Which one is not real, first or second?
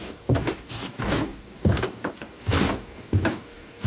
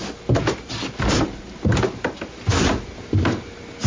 first